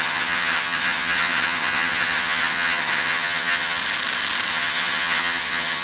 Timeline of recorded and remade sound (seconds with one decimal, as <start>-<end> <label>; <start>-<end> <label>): 0.0-3.8 remade; 3.8-4.5 recorded; 4.5-5.8 remade